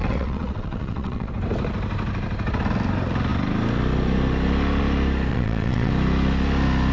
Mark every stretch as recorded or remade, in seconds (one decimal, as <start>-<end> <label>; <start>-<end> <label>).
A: 0.0-1.3 remade; 1.3-5.3 recorded; 5.3-5.9 remade; 5.9-6.9 recorded